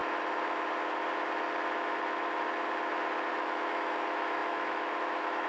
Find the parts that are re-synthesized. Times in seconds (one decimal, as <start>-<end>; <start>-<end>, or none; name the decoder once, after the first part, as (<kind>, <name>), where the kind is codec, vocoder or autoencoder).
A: 3.3-5.5 (autoencoder, DAC-VAE)